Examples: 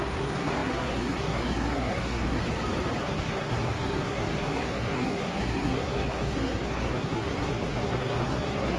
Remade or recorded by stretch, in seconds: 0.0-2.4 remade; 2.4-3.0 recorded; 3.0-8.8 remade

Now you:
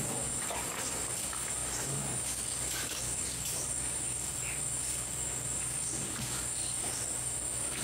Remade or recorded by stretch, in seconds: 0.0-7.8 remade

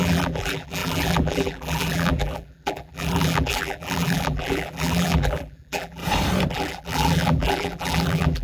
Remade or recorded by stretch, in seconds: 0.0-6.0 remade; 6.0-6.5 recorded; 6.5-8.4 remade

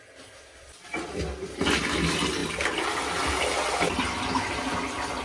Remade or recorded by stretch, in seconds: 0.0-5.2 recorded

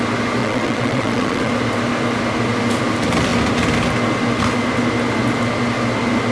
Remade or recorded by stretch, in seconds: 0.0-0.4 recorded; 0.4-1.5 remade; 1.5-6.3 recorded

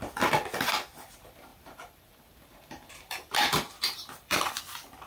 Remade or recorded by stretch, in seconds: 0.0-1.5 recorded; 1.5-4.6 remade; 4.6-5.1 recorded

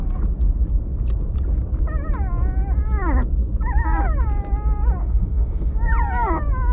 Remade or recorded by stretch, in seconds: 0.0-5.0 recorded; 5.0-5.7 remade; 5.7-6.7 recorded

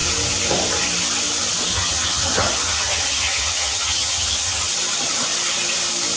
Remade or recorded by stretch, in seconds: 0.0-1.7 recorded; 1.7-4.7 remade; 4.7-6.2 recorded